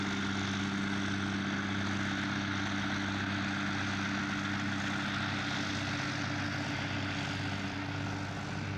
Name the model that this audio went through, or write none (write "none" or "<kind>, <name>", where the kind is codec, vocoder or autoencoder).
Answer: none